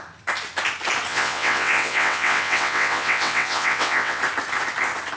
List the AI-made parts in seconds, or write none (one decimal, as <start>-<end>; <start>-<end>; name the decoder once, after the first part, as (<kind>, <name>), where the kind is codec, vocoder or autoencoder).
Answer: 1.1-4.2 (vocoder, WaveNeXt)